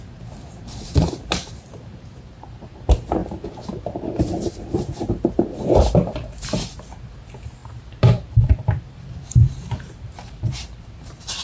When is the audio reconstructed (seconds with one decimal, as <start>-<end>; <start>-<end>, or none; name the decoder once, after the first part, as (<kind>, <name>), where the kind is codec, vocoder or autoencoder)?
0.0-11.4 (vocoder, BigVGAN v2)